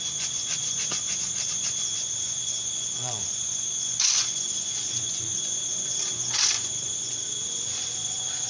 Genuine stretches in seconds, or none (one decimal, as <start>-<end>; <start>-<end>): none